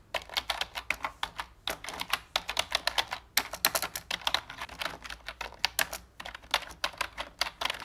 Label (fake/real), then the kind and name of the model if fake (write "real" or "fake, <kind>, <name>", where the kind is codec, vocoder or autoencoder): real